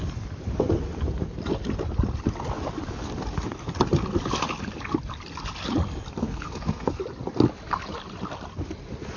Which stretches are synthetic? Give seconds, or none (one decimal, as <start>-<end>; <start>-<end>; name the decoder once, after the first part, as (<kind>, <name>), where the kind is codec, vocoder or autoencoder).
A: 6.2-7.0 (codec, SNAC)